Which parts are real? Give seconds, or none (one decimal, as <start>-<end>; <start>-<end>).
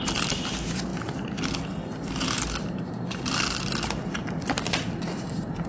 0.0-2.6; 3.3-5.7